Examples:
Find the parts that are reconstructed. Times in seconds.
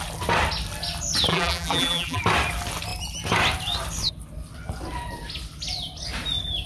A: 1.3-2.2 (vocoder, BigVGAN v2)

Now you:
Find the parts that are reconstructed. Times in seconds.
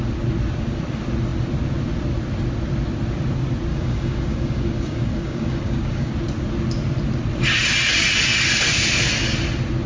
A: 3.7-6.1 (codec, DAC)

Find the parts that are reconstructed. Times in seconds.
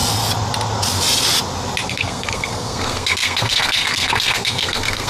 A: 1.9-5.1 (codec, SNAC)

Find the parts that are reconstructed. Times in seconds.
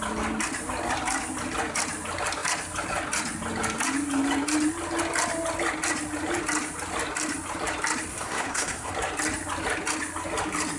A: 8.1-8.9 (codec, SNAC)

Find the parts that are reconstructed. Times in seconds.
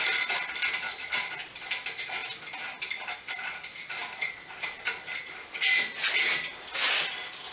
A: none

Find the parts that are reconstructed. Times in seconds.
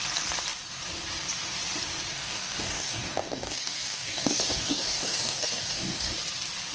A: 2.1-6.1 (codec, DAC)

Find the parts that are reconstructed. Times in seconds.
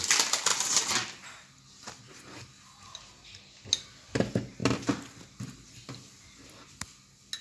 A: none